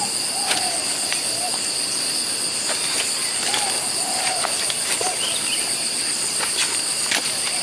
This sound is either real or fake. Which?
real